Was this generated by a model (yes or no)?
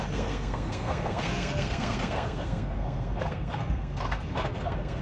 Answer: yes